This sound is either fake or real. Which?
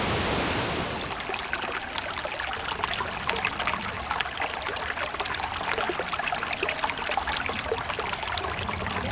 real